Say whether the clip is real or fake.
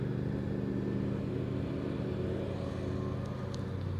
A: real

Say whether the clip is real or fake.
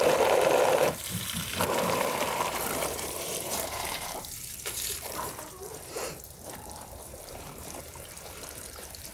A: fake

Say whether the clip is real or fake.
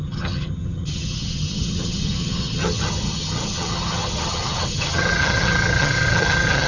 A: fake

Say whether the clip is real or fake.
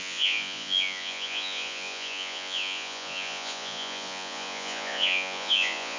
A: fake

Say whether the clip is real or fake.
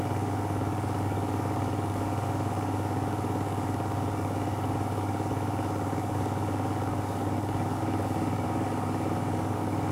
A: fake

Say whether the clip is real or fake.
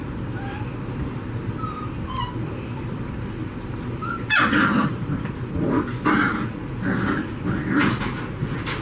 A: real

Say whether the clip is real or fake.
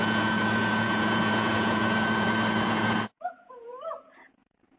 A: fake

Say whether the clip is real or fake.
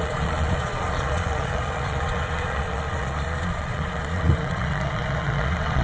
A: fake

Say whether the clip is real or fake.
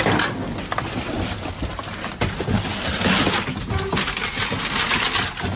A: real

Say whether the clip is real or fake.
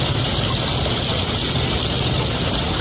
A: real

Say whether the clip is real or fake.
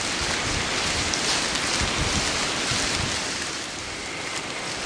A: real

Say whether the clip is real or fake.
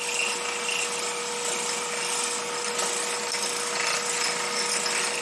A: real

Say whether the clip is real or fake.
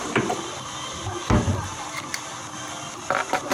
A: real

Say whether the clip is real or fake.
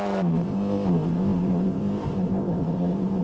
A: fake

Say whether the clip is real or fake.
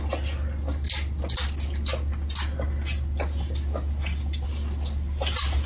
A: real